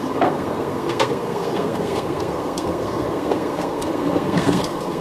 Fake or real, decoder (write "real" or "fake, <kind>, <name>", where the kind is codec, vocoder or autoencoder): fake, codec, SNAC